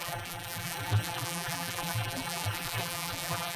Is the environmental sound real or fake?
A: fake